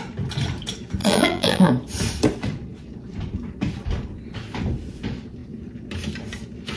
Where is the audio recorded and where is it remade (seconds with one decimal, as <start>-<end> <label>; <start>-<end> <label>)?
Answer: 0.0-1.0 recorded; 1.0-1.7 remade; 1.7-6.8 recorded